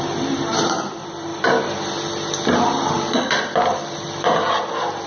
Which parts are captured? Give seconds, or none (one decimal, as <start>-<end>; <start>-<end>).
0.0-5.1